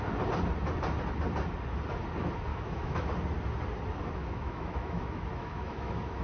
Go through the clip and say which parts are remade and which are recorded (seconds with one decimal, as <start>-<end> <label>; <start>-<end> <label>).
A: 0.0-2.5 recorded; 2.5-3.1 remade; 3.1-4.2 recorded; 4.2-6.2 remade